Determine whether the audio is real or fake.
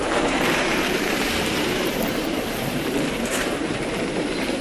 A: fake